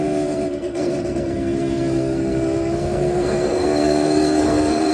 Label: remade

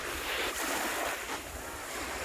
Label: recorded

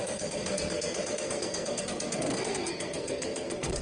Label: remade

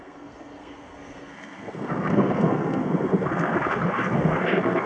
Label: remade